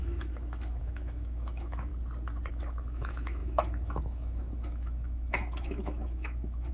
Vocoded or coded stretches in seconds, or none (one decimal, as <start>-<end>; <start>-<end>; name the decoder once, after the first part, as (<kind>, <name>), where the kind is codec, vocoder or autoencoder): 0.0-1.9 (autoencoder, DAC-VAE); 2.5-6.7